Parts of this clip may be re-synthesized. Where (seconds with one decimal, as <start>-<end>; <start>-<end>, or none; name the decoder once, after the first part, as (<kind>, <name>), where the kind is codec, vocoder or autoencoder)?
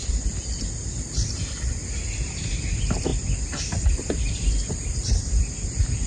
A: none